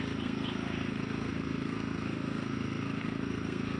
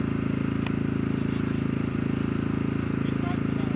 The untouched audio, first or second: second